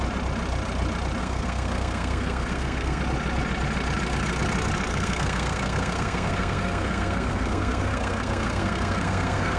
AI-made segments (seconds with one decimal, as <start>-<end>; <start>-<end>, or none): 1.2-3.0; 4.9-9.6